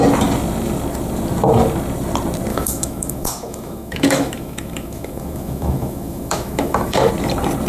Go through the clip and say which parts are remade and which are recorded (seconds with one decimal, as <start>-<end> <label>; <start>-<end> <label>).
0.0-2.5 recorded; 2.5-7.1 remade; 7.1-7.7 recorded